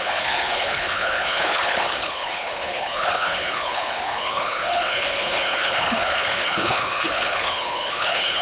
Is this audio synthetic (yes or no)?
yes